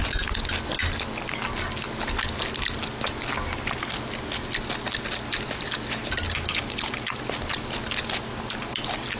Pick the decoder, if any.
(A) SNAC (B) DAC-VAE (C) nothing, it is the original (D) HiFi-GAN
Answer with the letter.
C